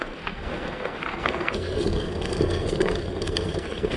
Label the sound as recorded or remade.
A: remade